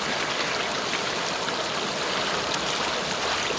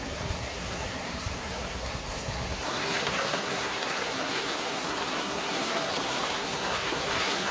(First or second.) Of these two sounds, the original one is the first